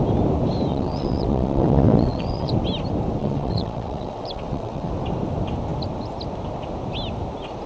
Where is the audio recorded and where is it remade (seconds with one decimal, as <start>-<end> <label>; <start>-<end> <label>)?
0.0-0.7 recorded; 0.7-2.5 remade; 2.5-3.2 recorded; 3.2-4.9 remade; 4.9-7.7 recorded